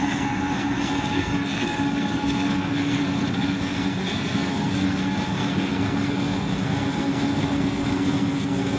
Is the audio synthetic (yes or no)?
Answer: yes